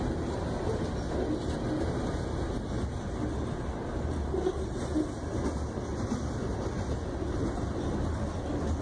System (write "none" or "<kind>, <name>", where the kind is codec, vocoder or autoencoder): none